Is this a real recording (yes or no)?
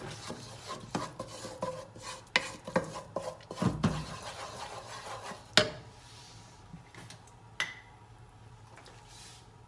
yes